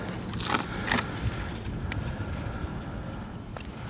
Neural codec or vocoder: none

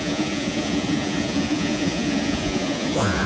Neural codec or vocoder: vocoder, Vocos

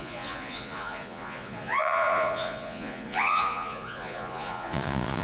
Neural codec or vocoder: vocoder, Vocos